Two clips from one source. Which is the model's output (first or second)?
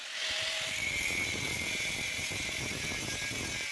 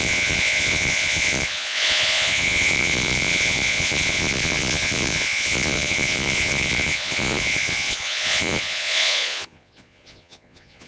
second